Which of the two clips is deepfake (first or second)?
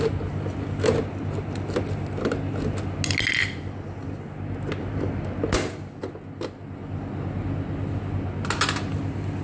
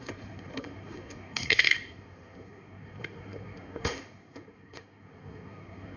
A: second